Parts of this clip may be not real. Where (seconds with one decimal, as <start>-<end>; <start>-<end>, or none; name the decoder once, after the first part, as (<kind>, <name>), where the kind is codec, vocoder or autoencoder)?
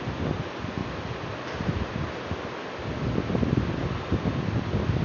none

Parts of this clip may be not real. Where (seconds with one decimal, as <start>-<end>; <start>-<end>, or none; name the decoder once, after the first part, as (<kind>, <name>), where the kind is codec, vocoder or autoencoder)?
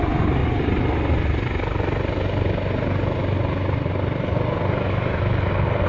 none